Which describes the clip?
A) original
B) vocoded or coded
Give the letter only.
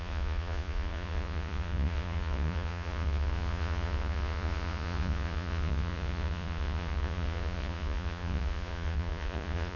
B